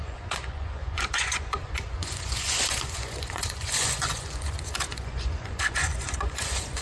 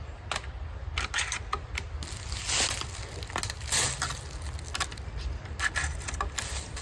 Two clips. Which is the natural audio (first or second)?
second